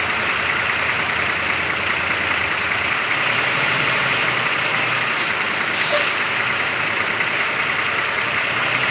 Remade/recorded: remade